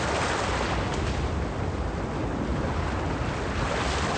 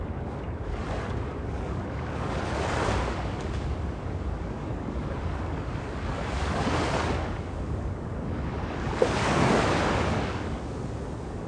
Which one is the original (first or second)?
first